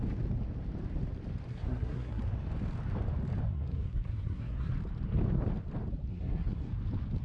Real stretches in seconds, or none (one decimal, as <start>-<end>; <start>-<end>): 0.0-1.5; 2.2-3.5; 4.7-6.1; 6.7-7.2